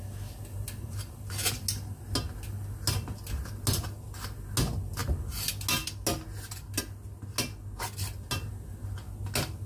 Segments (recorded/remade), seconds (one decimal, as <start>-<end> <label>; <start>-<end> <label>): 0.0-9.7 recorded